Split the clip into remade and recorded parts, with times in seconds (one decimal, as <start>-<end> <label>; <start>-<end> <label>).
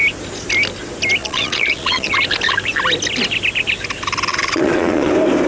0.0-1.2 recorded; 1.2-2.1 remade; 2.1-4.3 recorded; 4.3-5.1 remade; 5.1-5.5 recorded